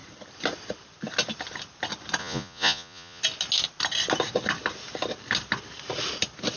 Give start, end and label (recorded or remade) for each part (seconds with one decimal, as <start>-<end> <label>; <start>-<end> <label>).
0.0-2.2 recorded; 2.2-3.2 remade; 3.2-6.6 recorded